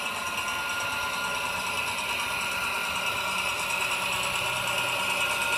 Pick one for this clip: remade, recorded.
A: recorded